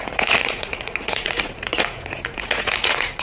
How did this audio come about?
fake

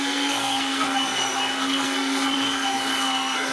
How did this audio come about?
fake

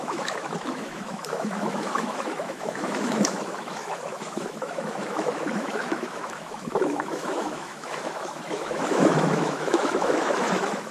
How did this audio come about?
fake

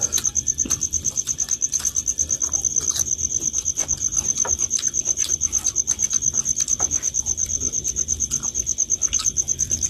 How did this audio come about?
real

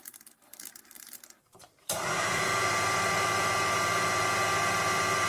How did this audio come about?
fake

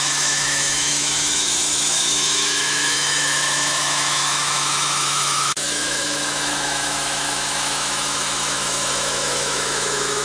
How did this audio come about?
fake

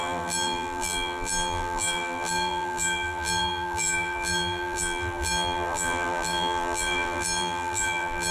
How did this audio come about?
fake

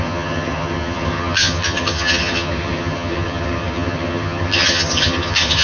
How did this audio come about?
fake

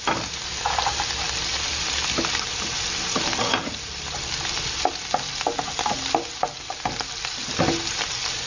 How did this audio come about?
real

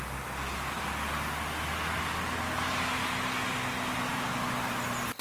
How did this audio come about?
real